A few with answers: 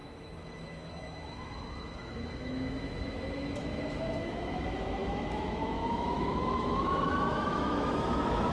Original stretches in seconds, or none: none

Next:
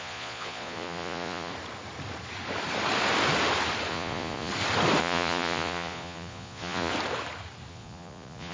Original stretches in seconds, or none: 1.5-3.9; 4.5-5.0; 6.9-7.7

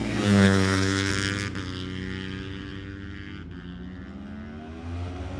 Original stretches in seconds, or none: 1.1-5.4

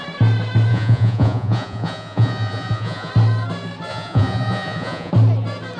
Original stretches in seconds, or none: 0.0-0.7; 3.1-3.9; 5.1-5.8

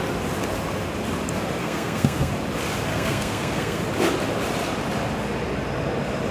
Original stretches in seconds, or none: 0.0-1.6; 2.3-2.9; 3.8-6.3